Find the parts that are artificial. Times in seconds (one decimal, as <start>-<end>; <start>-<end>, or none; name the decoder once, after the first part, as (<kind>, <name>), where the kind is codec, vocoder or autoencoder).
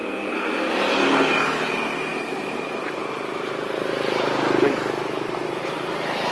0.0-0.7 (codec, SNAC)